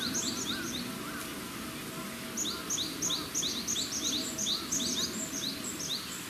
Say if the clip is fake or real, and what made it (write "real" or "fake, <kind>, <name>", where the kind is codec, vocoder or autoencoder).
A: real